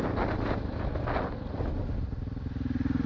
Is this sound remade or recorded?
recorded